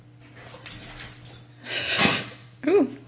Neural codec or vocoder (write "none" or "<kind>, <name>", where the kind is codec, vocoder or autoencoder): none